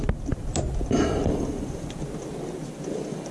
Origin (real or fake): real